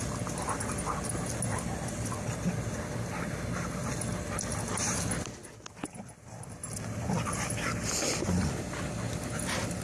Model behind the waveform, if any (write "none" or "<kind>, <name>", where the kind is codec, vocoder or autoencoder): none